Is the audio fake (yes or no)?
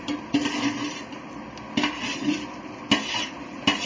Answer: no